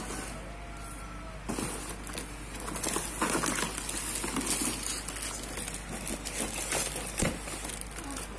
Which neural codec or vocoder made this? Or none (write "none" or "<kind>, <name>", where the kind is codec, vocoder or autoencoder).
none